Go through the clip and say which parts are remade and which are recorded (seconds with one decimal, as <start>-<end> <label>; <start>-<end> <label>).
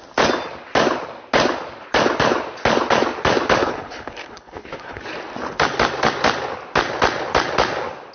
0.0-3.6 recorded; 3.6-5.0 remade; 5.0-8.1 recorded